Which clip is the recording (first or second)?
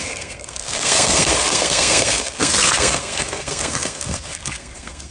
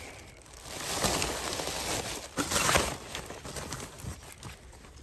second